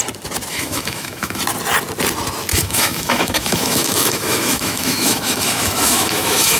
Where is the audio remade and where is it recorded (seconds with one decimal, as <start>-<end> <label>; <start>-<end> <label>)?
0.0-0.5 recorded; 0.5-1.4 remade; 1.4-2.5 recorded; 2.5-6.6 remade

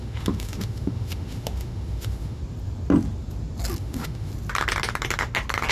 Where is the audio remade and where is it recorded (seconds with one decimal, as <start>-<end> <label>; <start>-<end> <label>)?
0.0-2.4 remade; 2.4-3.8 recorded; 3.8-4.3 remade; 4.3-5.7 recorded

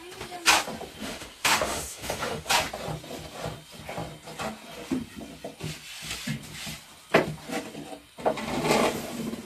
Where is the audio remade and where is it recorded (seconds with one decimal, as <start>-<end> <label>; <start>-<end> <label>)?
0.0-1.0 recorded; 1.0-2.5 remade; 2.5-9.5 recorded